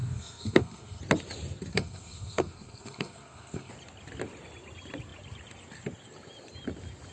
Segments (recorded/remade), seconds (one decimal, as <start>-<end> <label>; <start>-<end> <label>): 0.0-1.0 remade; 1.0-1.7 recorded; 1.7-3.7 remade; 3.7-7.1 recorded